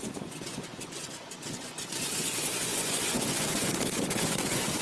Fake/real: fake